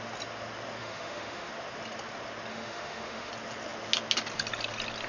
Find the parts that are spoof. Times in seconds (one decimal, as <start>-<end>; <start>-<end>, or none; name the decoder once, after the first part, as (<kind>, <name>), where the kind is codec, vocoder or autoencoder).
0.8-1.5 (autoencoder, DAC-VAE); 2.5-3.3